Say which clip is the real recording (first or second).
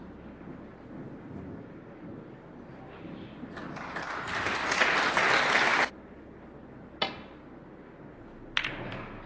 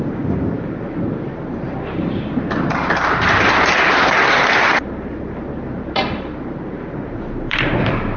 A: first